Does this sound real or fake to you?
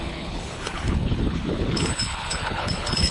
fake